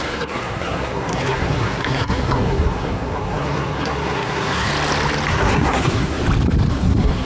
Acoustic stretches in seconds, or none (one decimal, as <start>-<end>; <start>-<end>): 4.7-5.3; 6.2-6.7